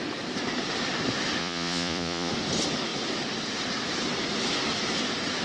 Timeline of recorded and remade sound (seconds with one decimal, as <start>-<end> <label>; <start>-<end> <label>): 0.0-1.4 recorded; 1.4-2.3 remade; 2.3-5.4 recorded